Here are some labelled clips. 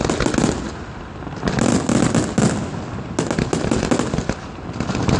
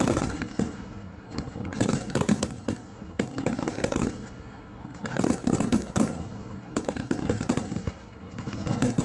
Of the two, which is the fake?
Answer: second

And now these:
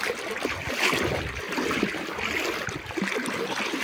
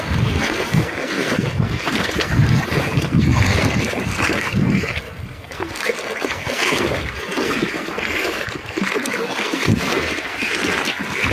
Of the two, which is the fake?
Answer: second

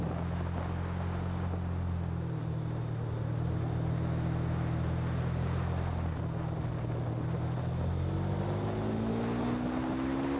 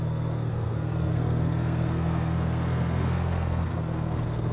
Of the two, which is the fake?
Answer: second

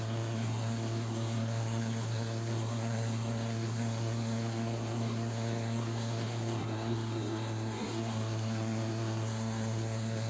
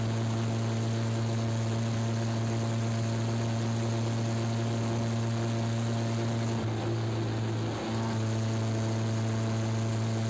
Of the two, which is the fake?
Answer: first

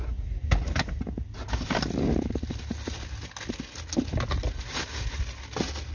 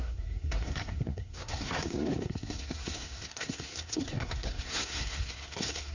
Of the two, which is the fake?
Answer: second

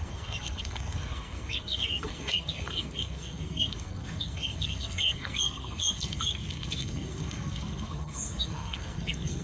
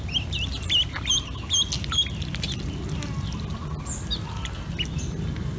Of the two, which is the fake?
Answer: first